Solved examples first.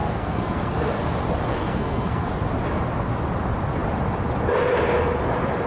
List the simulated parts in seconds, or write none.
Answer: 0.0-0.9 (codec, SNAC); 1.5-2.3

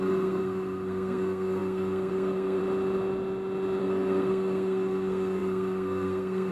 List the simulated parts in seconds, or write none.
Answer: 0.0-2.6 (codec, SNAC); 3.8-6.5

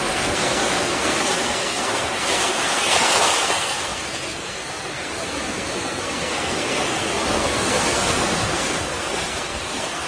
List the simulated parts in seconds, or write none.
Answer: 0.0-10.1 (codec, SNAC)